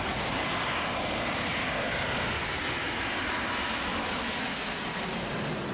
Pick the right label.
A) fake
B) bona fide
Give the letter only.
B